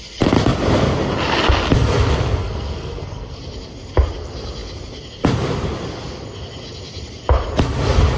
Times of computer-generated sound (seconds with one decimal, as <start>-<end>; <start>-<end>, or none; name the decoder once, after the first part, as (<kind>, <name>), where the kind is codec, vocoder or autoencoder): 2.4-3.4 (codec, SNAC)